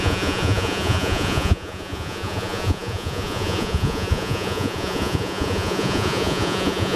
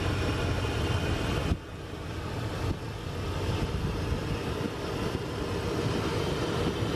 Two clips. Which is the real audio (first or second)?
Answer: second